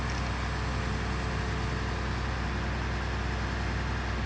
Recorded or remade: recorded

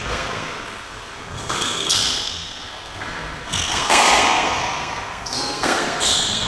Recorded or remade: remade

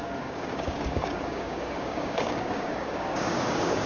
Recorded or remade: remade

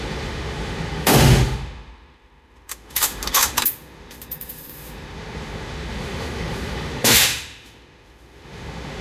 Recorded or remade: remade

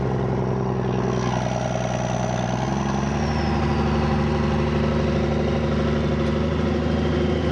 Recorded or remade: recorded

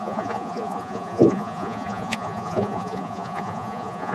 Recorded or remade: remade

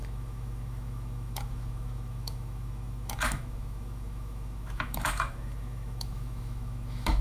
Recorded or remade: remade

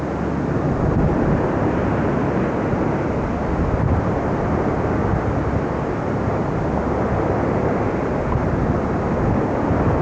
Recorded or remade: recorded